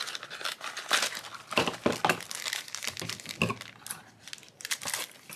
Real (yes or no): yes